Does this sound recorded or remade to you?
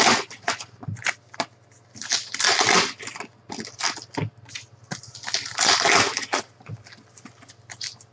recorded